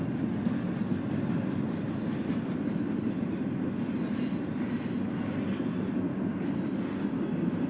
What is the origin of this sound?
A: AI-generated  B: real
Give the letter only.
B